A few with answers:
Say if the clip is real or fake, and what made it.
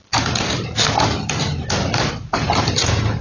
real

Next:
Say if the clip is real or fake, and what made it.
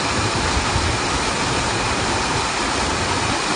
real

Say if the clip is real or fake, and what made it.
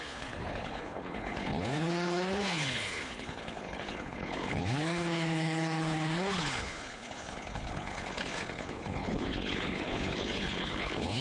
fake, codec, HILCodec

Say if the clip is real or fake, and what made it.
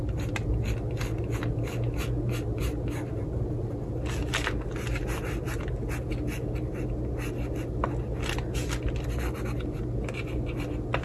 real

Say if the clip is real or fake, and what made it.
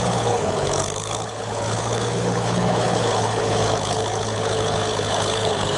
fake, codec, HILCodec